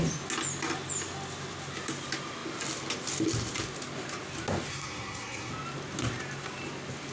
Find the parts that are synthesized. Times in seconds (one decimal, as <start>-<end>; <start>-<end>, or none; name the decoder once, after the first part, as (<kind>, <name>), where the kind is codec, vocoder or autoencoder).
4.7-5.5 (codec, SNAC)